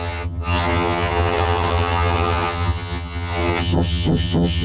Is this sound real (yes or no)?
no